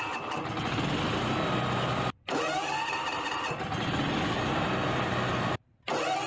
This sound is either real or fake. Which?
real